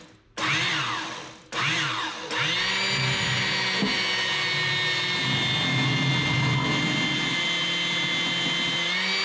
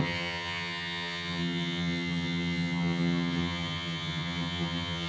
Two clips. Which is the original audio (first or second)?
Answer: first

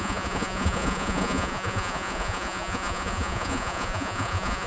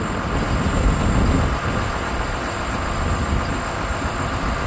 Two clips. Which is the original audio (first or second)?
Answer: second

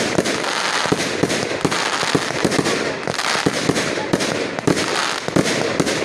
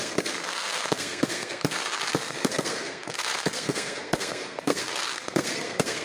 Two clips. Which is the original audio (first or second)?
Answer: first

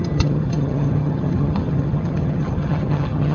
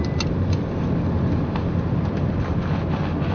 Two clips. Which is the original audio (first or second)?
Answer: second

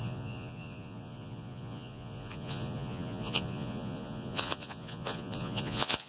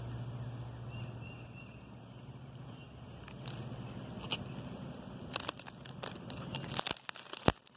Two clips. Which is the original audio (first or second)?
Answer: second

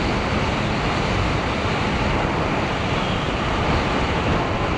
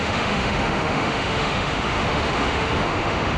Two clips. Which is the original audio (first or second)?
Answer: first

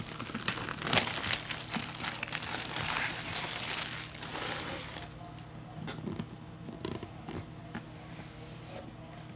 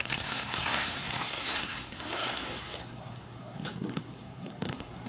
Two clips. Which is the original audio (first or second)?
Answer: first